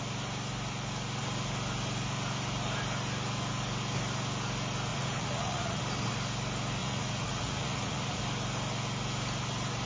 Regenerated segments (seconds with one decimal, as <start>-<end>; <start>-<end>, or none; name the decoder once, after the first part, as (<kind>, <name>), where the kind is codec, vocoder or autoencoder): 4.9-5.8 (vocoder, Vocos); 6.8-8.2